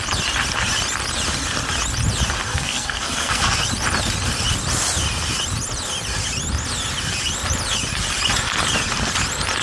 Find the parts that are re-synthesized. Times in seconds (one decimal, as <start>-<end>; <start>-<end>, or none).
2.5-3.6